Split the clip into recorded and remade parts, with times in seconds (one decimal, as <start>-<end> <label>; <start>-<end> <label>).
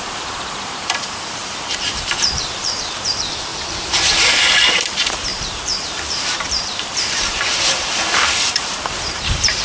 0.0-3.5 remade; 3.5-4.7 recorded; 4.7-9.6 remade